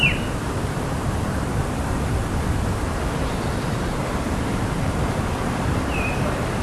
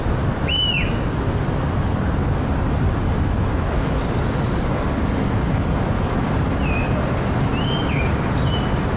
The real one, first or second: second